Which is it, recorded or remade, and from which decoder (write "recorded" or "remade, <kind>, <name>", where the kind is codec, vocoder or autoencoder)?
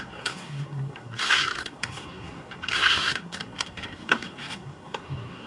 remade, codec, SNAC